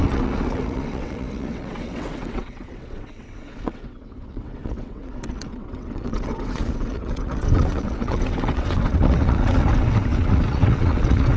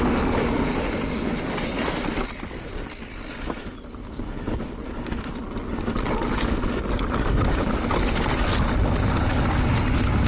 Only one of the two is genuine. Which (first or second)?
second